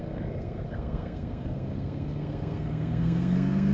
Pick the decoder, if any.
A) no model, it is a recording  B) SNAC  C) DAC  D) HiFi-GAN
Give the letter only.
B